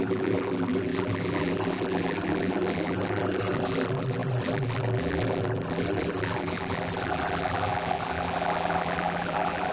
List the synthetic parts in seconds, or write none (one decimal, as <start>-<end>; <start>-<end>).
0.0-9.7